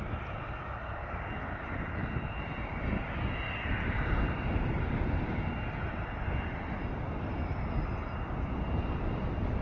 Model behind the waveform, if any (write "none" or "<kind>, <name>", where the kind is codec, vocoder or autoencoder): none